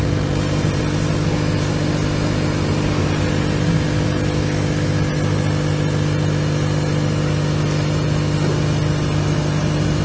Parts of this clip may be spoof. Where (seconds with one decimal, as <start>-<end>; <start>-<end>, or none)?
0.0-0.8